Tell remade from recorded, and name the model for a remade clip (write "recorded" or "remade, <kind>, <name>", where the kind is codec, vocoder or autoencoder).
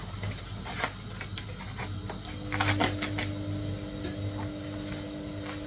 recorded